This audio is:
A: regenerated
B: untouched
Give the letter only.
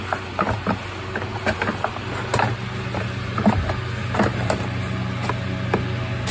B